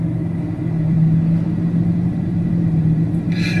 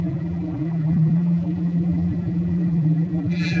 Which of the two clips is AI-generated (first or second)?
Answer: second